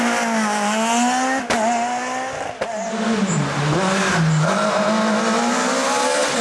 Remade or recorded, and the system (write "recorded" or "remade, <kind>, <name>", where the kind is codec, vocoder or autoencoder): recorded